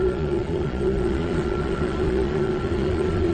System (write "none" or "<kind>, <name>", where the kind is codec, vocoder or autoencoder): vocoder, Vocos